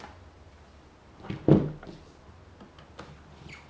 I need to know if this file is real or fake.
real